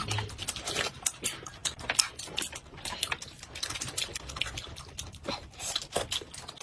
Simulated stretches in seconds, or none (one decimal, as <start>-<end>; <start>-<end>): none